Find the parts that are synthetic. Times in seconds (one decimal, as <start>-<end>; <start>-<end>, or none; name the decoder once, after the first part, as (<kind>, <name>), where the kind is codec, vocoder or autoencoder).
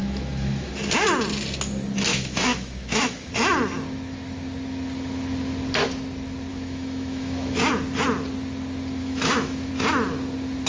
0.0-0.7 (autoencoder, DAC-VAE); 2.1-3.3; 6.5-7.6; 9.0-9.7